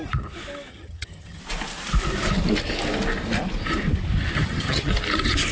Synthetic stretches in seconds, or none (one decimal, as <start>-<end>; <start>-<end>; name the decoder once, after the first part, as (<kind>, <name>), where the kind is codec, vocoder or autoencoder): 0.7-1.4 (vocoder, HiFi-GAN); 4.4-4.9